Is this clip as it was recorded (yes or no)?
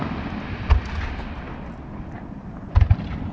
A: yes